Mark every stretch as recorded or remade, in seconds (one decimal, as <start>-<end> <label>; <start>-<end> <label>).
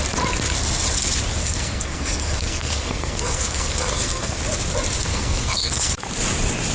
0.0-1.4 recorded; 1.4-4.4 remade; 4.4-5.1 recorded; 5.1-5.9 remade; 5.9-6.7 recorded